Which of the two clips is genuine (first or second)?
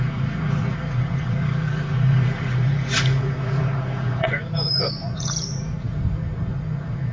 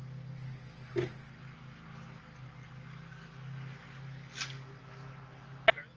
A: second